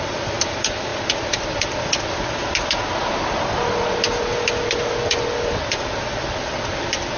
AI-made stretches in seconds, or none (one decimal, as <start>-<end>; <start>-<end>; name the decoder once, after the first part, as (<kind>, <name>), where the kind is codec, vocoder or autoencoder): none